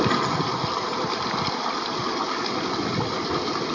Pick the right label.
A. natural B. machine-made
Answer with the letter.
A